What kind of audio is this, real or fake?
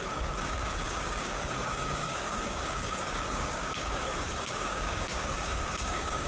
fake